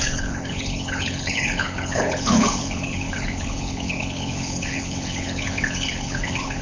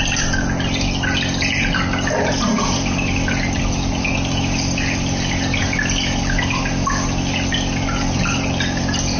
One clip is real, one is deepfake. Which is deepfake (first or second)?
first